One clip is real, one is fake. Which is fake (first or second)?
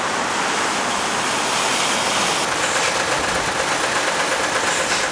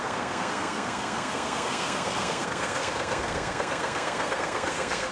second